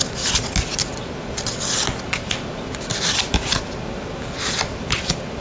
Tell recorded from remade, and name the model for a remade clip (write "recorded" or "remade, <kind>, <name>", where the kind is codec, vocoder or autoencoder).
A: recorded